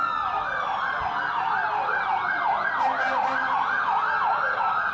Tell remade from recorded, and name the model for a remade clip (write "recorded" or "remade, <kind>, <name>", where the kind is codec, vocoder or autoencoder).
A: recorded